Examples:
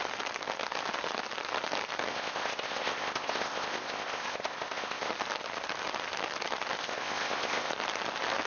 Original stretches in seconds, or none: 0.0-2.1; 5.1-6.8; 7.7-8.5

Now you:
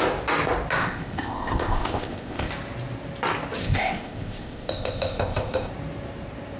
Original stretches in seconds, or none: 0.0-0.8; 2.5-3.6; 5.7-6.6

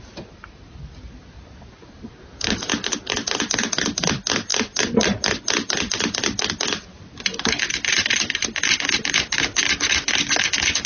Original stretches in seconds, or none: 0.0-10.9

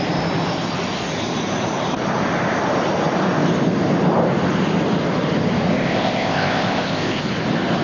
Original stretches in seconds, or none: 0.0-5.7; 7.2-7.8

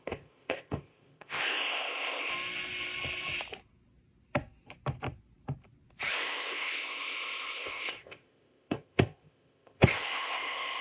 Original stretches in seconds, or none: 2.3-6.1